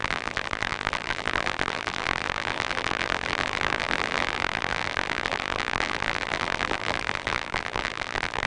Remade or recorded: remade